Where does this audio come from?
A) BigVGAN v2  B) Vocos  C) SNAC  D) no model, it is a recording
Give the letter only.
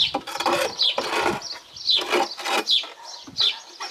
D